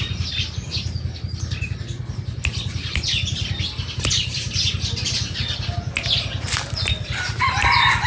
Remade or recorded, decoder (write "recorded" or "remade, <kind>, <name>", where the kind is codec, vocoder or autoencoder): recorded